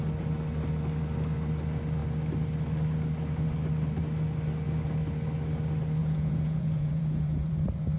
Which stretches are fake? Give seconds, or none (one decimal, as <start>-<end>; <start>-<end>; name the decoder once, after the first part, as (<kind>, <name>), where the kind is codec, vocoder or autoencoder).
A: 6.0-7.5 (vocoder, Vocos)